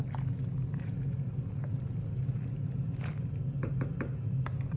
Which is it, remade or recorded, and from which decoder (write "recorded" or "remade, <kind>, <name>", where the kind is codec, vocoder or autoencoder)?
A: recorded